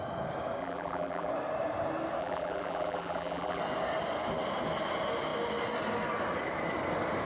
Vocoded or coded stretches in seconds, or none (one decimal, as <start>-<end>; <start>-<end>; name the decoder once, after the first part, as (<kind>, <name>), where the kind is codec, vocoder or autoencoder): 0.6-1.3 (vocoder, BigVGAN v2); 2.2-3.6